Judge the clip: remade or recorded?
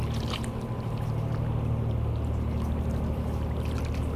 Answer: recorded